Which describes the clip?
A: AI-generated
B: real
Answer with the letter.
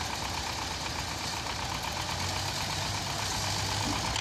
B